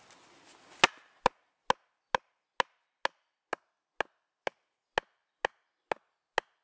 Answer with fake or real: real